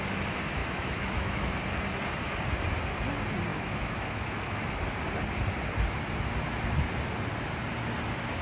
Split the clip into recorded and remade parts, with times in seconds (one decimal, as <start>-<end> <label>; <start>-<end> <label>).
0.0-0.6 recorded; 0.6-1.6 remade; 1.6-3.5 recorded; 3.5-4.7 remade; 4.7-8.4 recorded